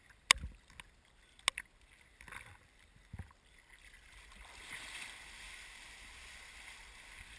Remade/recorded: recorded